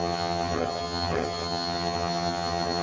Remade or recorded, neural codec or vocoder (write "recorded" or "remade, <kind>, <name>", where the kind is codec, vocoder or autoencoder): remade, vocoder, HiFi-GAN